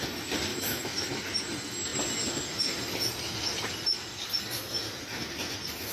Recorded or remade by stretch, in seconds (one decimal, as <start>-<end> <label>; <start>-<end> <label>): 0.0-0.5 recorded; 0.5-1.2 remade; 1.2-5.9 recorded